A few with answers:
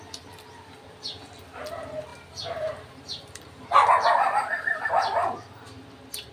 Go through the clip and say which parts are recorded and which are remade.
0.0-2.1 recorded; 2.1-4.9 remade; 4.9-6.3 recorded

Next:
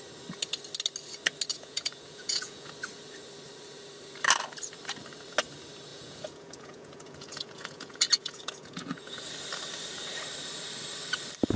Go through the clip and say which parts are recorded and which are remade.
0.0-1.5 recorded; 1.5-2.7 remade; 2.7-5.9 recorded; 5.9-9.2 remade; 9.2-11.6 recorded

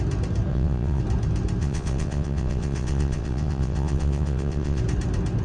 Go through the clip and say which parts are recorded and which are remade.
0.0-0.5 recorded; 0.5-1.0 remade; 1.0-1.6 recorded; 1.6-4.8 remade; 4.8-5.4 recorded

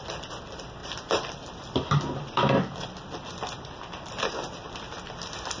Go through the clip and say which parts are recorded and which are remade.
0.0-0.8 recorded; 0.8-4.2 remade; 4.2-5.6 recorded

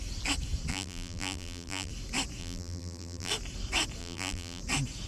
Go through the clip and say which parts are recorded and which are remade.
0.0-0.7 recorded; 0.7-1.9 remade; 1.9-2.4 recorded; 2.4-3.3 remade; 3.3-4.0 recorded; 4.0-4.6 remade; 4.6-5.1 recorded

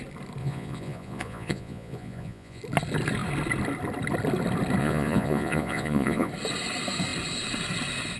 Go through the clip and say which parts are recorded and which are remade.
0.0-0.4 recorded; 0.4-2.6 remade; 2.6-4.8 recorded; 4.8-6.3 remade; 6.3-8.2 recorded

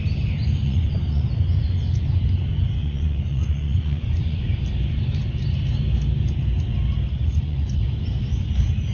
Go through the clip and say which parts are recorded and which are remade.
0.0-0.6 recorded; 0.6-1.3 remade; 1.3-2.8 recorded; 2.8-4.4 remade; 4.4-7.1 recorded; 7.1-7.8 remade; 7.8-8.9 recorded

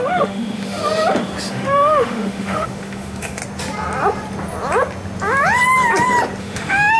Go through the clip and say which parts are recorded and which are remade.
0.0-0.8 remade; 0.8-1.5 recorded; 1.5-3.4 remade; 3.4-6.4 recorded; 6.4-7.0 remade